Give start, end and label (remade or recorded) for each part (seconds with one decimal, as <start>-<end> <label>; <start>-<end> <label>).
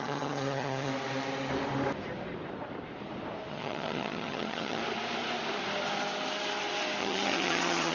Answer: 0.0-0.9 remade; 0.9-3.5 recorded; 3.5-4.8 remade; 4.8-7.0 recorded; 7.0-7.9 remade